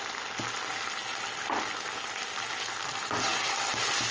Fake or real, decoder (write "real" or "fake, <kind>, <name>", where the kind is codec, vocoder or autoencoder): real